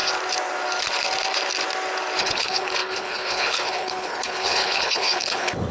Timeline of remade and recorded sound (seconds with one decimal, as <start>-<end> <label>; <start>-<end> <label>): 0.0-2.2 recorded; 2.2-5.7 remade